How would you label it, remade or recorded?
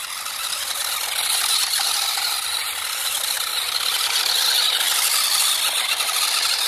recorded